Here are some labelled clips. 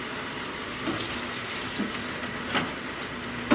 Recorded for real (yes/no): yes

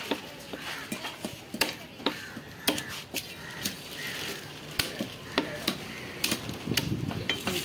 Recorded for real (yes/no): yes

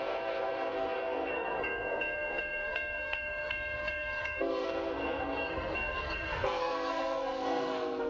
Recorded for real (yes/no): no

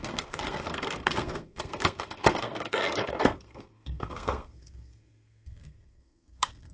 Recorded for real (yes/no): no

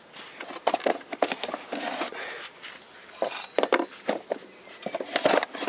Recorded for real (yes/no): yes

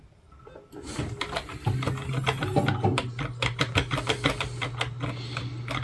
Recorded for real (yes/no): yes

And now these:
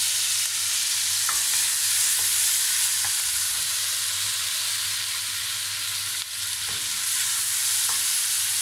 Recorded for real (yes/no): yes